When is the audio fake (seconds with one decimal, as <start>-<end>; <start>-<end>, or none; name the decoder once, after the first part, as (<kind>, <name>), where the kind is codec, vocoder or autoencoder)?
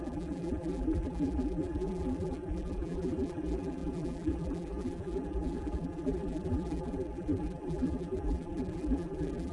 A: 0.0-9.5 (vocoder, BigVGAN v2)